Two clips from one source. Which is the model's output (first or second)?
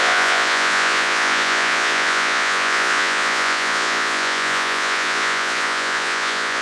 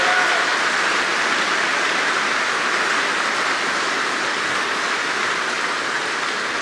first